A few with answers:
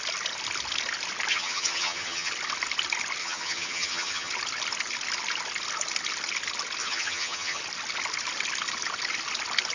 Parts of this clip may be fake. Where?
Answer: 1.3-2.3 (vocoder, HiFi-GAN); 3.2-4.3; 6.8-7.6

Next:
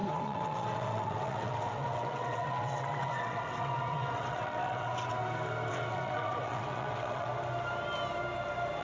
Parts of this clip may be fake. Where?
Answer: 0.0-5.1 (vocoder, WaveNeXt); 5.7-7.3

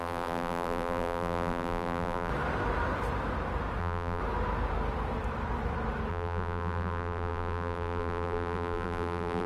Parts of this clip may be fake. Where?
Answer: 0.0-2.3 (vocoder, BigVGAN v2); 3.8-4.2; 6.1-9.5

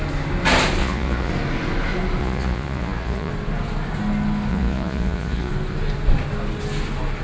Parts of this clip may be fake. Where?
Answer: 0.8-1.3 (vocoder, Vocos); 2.2-3.3; 4.5-5.5

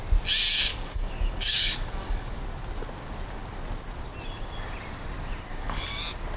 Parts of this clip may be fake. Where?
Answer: 0.7-2.4 (codec, DAC); 5.5-6.0

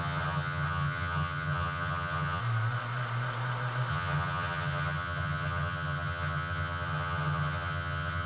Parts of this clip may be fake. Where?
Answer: 0.0-2.4 (vocoder, HiFi-GAN); 3.9-8.3

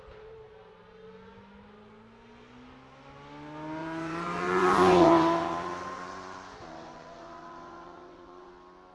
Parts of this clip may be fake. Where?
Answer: 3.8-8.5 (vocoder, Vocos)